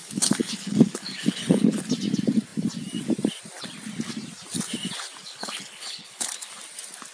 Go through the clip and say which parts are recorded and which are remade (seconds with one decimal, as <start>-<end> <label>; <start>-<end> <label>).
0.0-1.8 remade; 1.8-5.2 recorded; 5.2-6.5 remade; 6.5-7.1 recorded